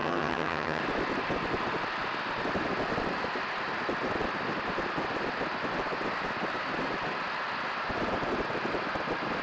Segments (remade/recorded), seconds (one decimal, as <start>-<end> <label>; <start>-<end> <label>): 0.0-0.8 remade; 0.8-9.4 recorded